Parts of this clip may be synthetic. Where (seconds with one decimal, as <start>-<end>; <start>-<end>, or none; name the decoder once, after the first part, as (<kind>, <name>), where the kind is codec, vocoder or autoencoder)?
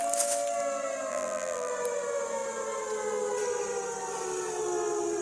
1.1-1.7 (vocoder, BigVGAN v2)